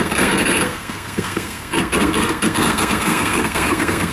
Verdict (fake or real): fake